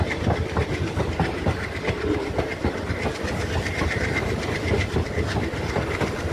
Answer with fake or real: real